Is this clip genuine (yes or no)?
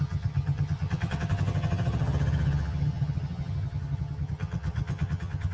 no